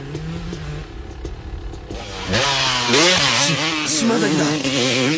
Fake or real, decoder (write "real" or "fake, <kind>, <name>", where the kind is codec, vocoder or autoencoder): real